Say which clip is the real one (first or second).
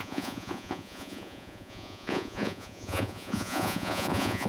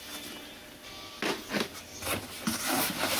second